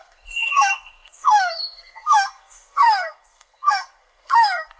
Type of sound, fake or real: fake